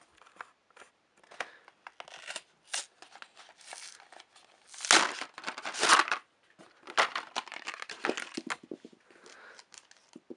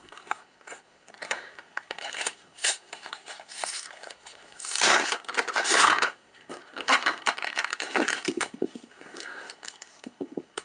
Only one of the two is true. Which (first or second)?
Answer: first